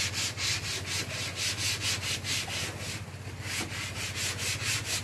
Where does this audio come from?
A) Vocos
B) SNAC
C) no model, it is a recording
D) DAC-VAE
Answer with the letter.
C